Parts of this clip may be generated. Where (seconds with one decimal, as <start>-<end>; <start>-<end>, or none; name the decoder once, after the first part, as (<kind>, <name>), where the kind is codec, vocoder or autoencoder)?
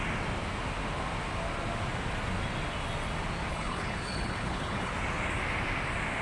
3.5-4.9 (codec, HILCodec)